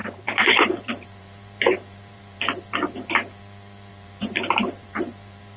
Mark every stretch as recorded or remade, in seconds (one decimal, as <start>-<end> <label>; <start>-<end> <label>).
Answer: 0.0-3.4 remade; 3.4-3.9 recorded; 3.9-5.6 remade